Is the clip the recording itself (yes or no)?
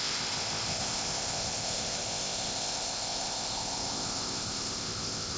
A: no